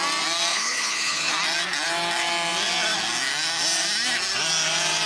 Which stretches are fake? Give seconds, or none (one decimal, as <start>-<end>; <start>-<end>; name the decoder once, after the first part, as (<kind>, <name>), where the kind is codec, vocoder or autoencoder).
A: 0.5-1.3 (codec, HILCodec)